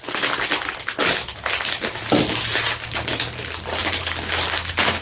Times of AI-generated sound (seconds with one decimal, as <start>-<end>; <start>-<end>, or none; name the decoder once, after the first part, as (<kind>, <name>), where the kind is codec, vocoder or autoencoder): none